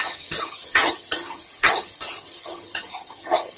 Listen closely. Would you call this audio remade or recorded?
remade